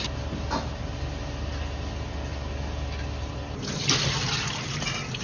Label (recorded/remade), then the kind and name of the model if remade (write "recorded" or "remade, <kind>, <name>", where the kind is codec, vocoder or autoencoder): recorded